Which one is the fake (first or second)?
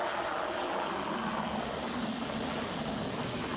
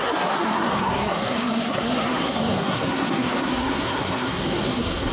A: second